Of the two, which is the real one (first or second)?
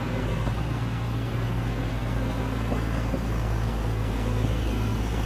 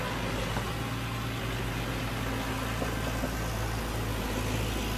second